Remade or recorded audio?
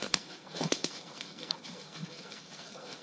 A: remade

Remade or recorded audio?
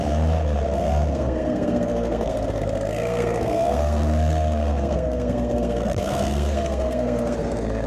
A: remade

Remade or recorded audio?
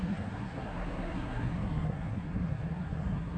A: remade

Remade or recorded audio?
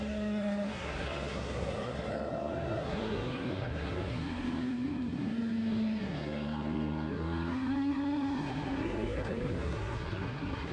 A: remade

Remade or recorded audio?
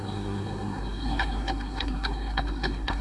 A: remade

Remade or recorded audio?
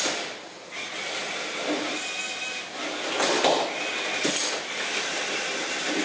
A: recorded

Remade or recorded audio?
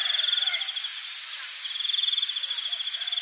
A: recorded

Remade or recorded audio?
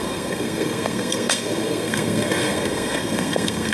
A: remade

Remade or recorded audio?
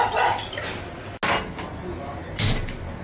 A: recorded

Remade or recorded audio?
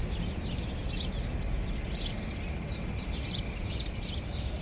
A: recorded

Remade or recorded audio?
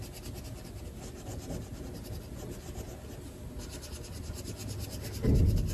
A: recorded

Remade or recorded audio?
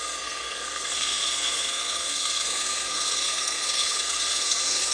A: remade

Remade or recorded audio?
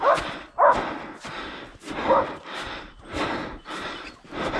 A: recorded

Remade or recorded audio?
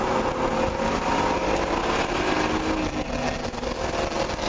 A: recorded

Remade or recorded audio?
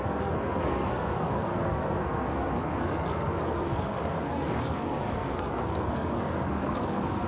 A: remade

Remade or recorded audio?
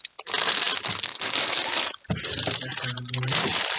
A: recorded